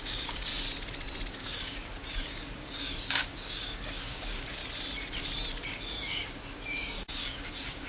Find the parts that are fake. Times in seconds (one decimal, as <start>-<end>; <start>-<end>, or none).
0.0-0.5; 1.3-4.6; 5.7-7.9